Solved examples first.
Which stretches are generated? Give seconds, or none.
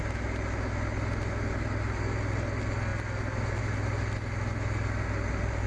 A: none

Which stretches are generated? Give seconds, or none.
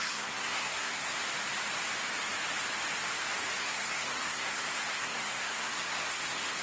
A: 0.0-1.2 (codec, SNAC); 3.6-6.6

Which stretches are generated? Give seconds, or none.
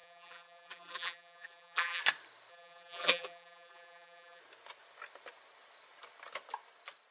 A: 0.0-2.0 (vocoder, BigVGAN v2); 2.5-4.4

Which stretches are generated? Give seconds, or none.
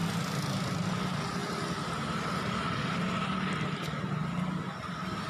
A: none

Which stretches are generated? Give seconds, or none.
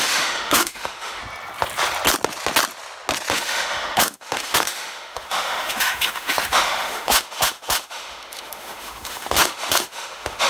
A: 0.0-1.2 (autoencoder, DAC-VAE); 3.3-10.5